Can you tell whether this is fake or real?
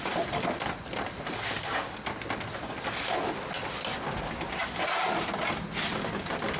real